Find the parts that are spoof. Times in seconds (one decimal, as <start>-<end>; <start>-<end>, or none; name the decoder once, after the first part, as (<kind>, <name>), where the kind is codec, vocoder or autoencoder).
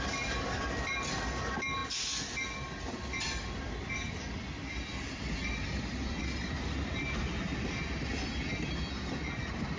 none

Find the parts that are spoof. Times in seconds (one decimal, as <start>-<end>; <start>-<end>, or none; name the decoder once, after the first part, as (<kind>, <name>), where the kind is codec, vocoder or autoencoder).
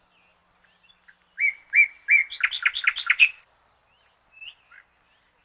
none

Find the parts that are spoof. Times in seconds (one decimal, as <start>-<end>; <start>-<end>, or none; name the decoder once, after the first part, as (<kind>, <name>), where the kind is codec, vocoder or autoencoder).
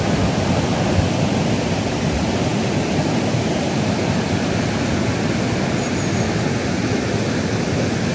none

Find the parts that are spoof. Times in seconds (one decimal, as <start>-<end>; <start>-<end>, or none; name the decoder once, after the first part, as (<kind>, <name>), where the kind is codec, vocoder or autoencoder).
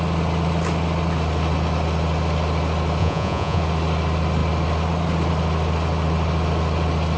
3.0-3.6 (vocoder, Vocos)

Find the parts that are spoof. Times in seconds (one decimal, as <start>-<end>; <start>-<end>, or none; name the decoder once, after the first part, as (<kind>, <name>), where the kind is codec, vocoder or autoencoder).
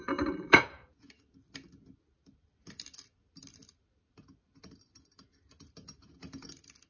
0.6-1.1 (vocoder, Vocos)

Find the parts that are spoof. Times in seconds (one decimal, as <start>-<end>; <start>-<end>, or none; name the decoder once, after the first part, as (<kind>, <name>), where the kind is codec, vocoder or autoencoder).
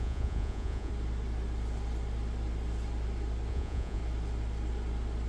0.0-0.9 (vocoder, Vocos); 3.5-4.0